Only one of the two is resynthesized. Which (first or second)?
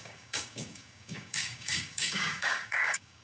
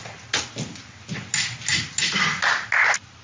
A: first